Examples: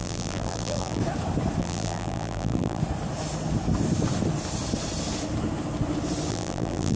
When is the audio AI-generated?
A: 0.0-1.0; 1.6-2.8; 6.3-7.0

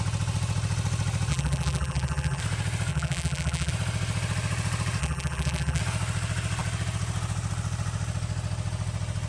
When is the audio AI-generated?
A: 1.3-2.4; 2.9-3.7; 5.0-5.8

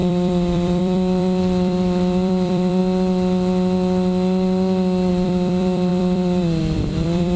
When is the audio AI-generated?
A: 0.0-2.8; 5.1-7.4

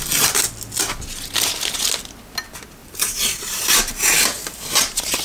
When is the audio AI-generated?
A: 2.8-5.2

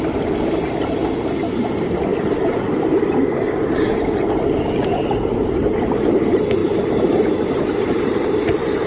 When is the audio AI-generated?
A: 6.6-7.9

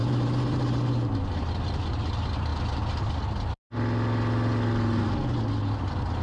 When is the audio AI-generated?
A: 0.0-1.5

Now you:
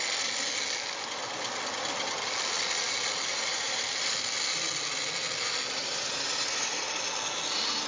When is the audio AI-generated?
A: 3.3-3.8; 5.8-7.0